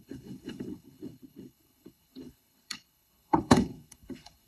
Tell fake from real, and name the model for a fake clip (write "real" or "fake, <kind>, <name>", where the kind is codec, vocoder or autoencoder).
fake, codec, HILCodec